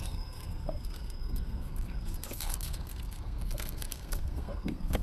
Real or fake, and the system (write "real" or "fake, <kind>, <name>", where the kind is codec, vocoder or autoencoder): fake, codec, SNAC